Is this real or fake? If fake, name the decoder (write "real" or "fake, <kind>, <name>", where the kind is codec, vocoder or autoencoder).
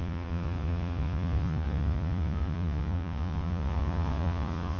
fake, vocoder, Vocos